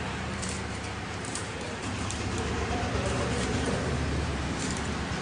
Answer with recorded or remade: remade